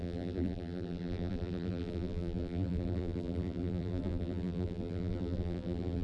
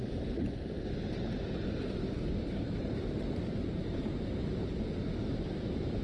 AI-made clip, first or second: first